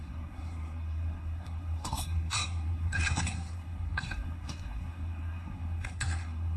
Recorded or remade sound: remade